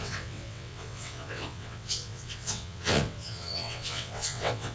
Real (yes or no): no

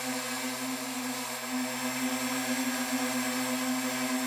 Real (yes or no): yes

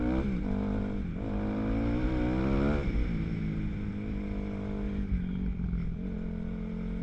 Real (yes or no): yes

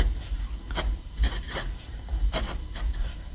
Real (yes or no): no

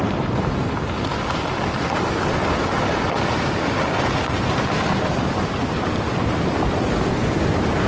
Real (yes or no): no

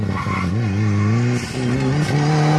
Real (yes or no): yes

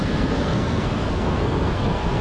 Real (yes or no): no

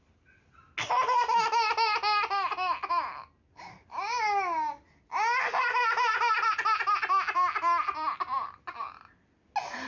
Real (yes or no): yes